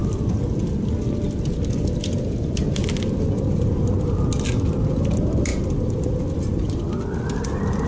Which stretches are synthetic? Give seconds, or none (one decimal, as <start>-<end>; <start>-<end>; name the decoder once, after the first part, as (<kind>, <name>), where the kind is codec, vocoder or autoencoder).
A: 0.0-0.6 (vocoder, BigVGAN v2); 5.5-7.9